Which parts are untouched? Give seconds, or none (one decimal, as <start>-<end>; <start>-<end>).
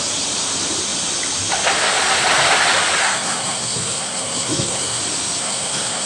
0.0-3.0; 5.0-5.4